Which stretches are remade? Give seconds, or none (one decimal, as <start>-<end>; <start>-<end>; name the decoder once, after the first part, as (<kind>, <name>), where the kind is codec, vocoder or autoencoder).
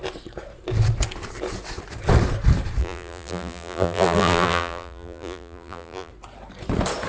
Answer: 2.8-6.1 (vocoder, BigVGAN v2)